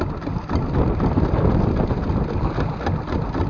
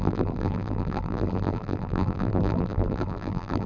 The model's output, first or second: second